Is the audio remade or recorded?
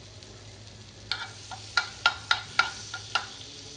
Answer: recorded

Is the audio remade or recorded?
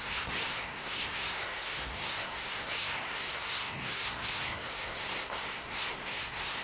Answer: remade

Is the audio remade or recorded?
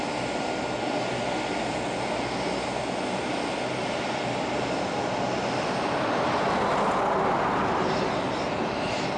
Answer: recorded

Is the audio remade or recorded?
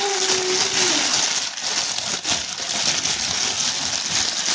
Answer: recorded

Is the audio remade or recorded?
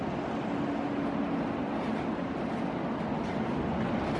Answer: recorded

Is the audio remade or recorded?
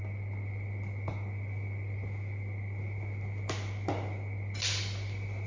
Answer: recorded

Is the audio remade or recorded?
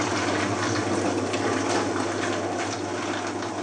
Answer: recorded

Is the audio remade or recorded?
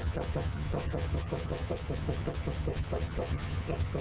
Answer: remade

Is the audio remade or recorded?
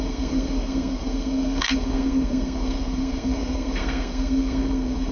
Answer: remade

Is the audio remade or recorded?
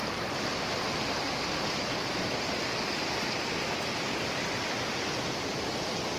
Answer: recorded